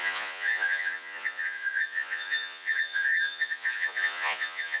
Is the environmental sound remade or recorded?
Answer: remade